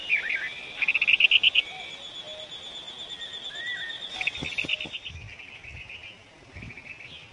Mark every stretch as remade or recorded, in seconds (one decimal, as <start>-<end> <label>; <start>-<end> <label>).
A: 0.0-7.3 recorded